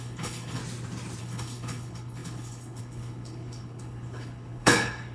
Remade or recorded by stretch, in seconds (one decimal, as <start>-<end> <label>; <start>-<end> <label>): 0.0-0.6 remade; 0.6-1.2 recorded; 1.2-5.1 remade